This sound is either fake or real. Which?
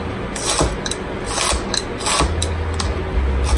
real